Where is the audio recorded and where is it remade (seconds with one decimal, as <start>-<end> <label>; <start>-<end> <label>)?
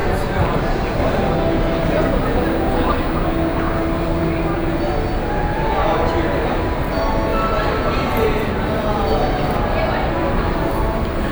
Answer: 0.0-7.3 recorded; 7.3-9.6 remade; 9.6-11.3 recorded